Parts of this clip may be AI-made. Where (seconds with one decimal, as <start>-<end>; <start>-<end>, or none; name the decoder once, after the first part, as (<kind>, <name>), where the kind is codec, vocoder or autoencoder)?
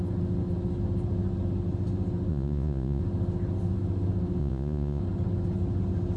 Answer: 2.3-3.0 (vocoder, Vocos); 4.4-5.0